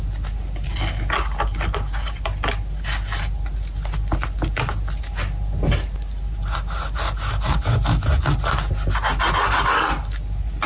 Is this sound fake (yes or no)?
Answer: no